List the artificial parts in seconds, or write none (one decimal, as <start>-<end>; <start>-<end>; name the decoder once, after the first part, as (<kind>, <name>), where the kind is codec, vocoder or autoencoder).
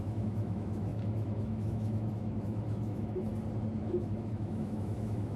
0.0-3.3 (autoencoder, DAC-VAE); 3.8-5.4